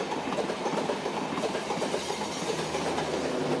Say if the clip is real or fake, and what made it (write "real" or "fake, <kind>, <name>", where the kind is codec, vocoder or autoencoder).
real